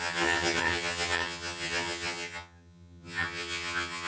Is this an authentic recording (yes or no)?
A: no